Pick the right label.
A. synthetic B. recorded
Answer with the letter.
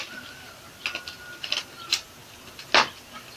B